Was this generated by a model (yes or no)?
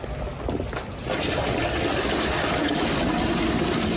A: no